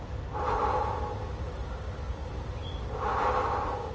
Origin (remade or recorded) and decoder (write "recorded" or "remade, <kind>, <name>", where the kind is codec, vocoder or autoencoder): recorded